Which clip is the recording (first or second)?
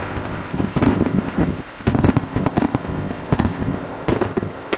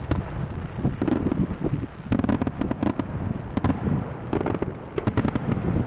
second